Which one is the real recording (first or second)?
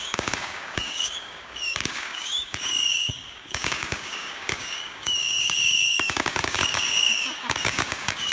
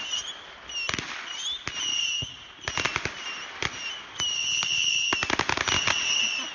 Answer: second